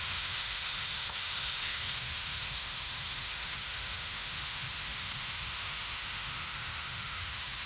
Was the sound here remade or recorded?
remade